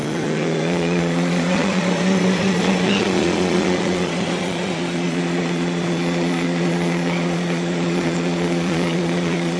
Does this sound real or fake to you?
fake